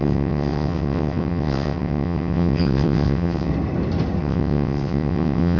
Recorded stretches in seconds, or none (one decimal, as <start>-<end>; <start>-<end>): 3.5-4.2